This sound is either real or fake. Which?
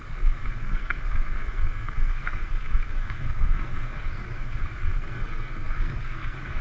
fake